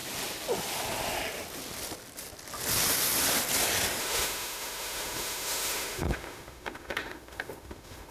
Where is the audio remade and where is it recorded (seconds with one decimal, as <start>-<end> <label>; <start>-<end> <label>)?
0.0-4.0 recorded; 4.0-8.1 remade